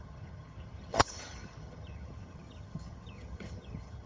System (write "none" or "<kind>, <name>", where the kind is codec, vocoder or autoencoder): vocoder, HiFi-GAN